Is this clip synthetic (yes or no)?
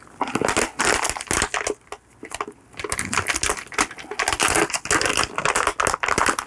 no